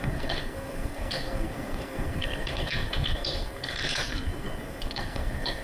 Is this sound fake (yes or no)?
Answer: yes